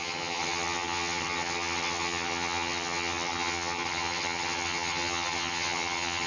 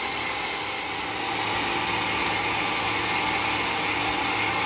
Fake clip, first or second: first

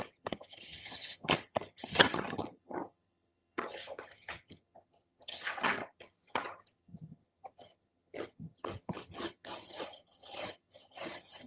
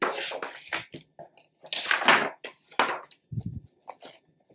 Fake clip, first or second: first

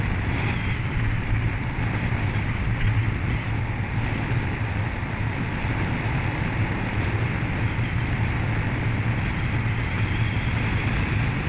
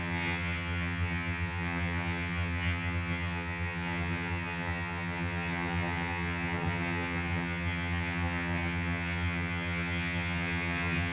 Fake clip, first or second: second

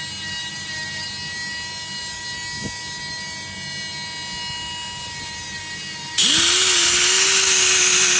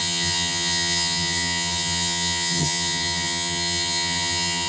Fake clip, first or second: second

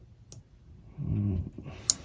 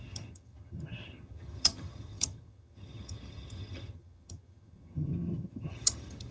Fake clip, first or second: second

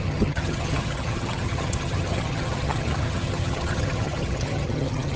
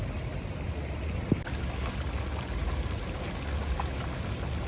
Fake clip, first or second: first